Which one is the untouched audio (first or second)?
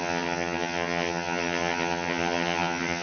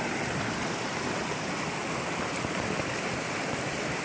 second